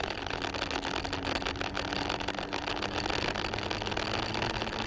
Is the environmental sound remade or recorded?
recorded